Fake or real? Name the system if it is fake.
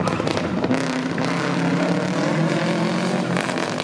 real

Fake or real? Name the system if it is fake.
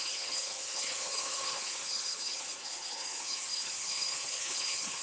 fake, codec, HILCodec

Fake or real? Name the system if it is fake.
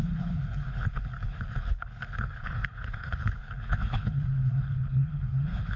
fake, codec, HILCodec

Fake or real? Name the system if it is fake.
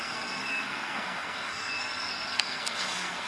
fake, codec, SNAC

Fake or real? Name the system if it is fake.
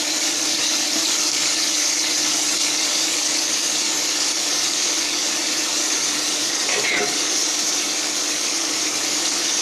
fake, codec, DAC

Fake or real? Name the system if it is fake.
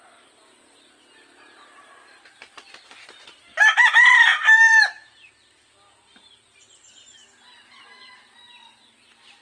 real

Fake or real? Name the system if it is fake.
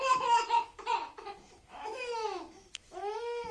fake, autoencoder, DAC-VAE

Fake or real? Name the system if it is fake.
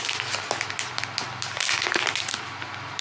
real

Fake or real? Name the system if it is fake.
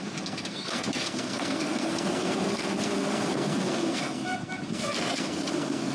fake, codec, SNAC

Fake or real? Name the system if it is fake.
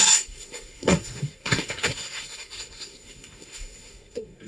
fake, codec, SNAC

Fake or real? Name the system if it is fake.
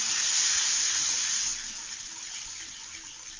real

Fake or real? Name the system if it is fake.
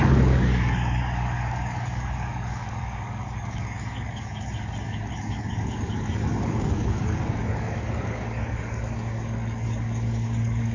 fake, codec, DAC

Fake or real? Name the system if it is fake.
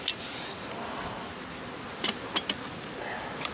real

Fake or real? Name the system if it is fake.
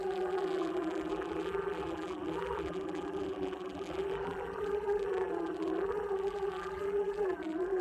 fake, vocoder, BigVGAN v2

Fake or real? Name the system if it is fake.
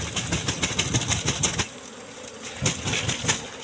real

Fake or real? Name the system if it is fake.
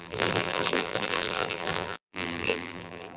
fake, vocoder, BigVGAN v2